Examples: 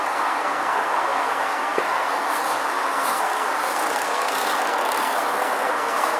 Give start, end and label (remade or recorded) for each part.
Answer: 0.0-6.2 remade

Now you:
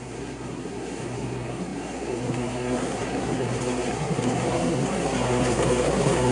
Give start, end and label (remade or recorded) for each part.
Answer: 0.0-6.3 remade

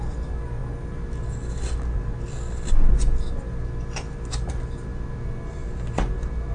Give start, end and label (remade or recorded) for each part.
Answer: 0.0-6.5 recorded